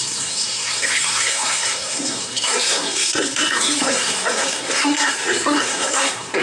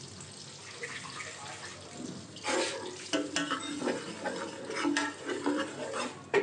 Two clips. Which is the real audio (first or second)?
second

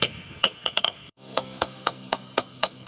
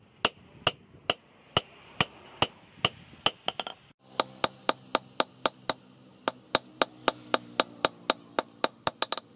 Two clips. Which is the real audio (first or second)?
second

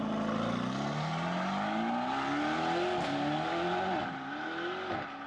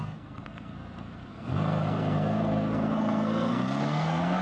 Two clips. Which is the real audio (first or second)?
first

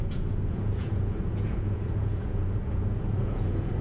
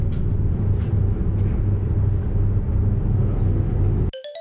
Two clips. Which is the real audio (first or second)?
second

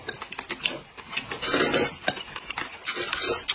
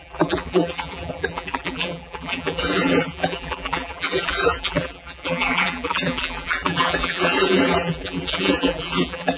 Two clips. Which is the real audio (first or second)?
first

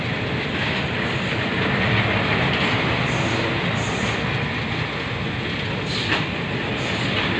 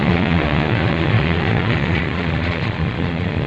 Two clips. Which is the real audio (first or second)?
first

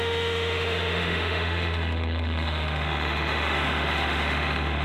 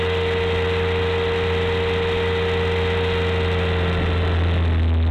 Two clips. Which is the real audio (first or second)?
second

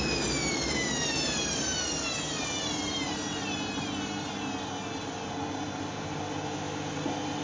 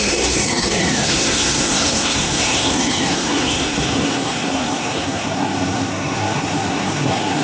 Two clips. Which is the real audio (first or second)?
first